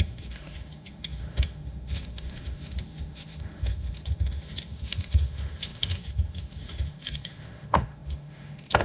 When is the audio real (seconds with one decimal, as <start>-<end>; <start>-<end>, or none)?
none